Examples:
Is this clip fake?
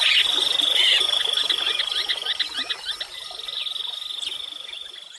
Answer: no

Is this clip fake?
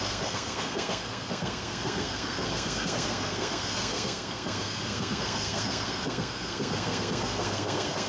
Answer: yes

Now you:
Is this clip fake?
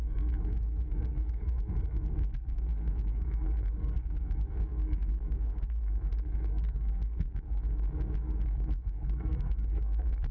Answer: yes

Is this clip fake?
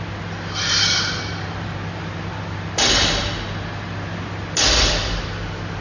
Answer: no